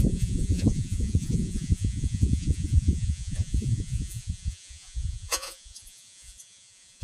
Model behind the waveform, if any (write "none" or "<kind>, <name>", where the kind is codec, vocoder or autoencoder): vocoder, Vocos